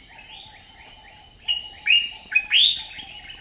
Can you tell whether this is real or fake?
real